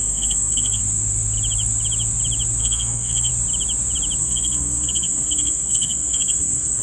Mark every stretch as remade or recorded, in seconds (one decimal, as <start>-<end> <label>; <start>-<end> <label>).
0.0-0.8 remade; 0.8-2.6 recorded; 2.6-3.3 remade; 3.3-4.2 recorded; 4.2-6.8 remade